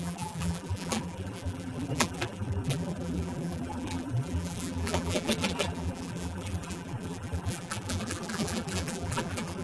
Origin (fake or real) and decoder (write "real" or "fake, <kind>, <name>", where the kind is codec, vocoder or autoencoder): fake, vocoder, BigVGAN v2